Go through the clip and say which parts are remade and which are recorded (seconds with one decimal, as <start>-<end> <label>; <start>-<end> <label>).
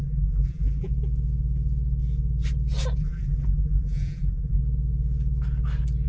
0.0-0.9 remade; 0.9-3.0 recorded; 3.0-4.6 remade; 4.6-6.1 recorded